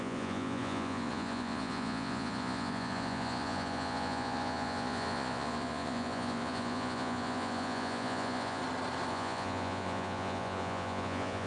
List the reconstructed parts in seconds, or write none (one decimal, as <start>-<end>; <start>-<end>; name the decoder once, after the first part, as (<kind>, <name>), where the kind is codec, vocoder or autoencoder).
0.0-8.6 (vocoder, Vocos); 9.1-11.5